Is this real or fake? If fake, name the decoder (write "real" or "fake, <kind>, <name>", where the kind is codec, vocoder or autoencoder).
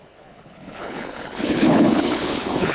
fake, codec, HILCodec